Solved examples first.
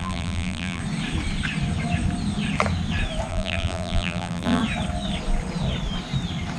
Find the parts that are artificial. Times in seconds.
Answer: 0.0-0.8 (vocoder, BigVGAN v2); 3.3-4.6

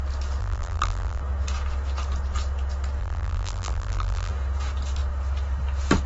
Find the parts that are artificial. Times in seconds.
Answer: 0.4-1.2 (vocoder, BigVGAN v2); 3.0-4.3

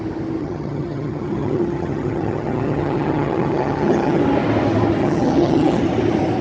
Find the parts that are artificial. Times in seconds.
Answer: 0.4-4.2 (vocoder, HiFi-GAN); 5.0-5.8